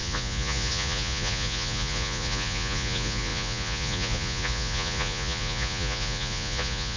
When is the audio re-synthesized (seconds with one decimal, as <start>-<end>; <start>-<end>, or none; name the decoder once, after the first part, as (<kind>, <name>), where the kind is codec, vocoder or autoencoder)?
0.0-7.0 (vocoder, Vocos)